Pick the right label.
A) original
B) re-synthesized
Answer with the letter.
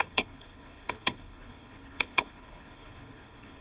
B